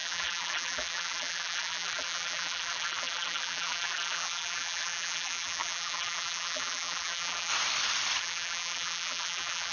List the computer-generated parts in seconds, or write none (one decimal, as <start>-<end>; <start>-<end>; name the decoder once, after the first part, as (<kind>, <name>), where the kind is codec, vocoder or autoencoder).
0.0-7.5 (vocoder, BigVGAN v2); 8.2-9.7